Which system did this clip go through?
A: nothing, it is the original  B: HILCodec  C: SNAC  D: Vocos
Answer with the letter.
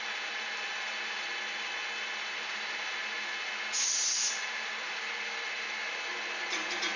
A